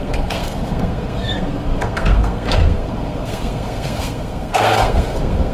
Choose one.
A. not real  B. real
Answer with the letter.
A